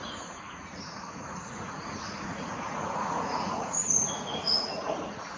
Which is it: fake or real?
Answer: fake